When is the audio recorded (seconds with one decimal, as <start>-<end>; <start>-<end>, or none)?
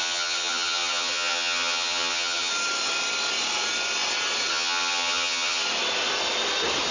2.5-4.5; 5.6-6.9